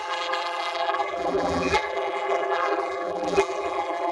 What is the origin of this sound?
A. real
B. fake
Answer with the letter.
B